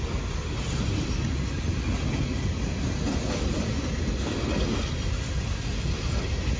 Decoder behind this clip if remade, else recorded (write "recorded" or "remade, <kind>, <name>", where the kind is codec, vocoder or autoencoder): recorded